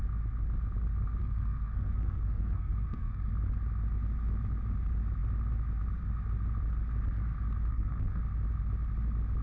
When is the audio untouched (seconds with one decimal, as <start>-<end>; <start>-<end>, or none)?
0.0-1.2; 3.3-7.7; 8.2-9.4